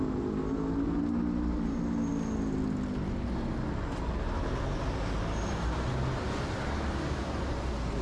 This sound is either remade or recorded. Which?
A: recorded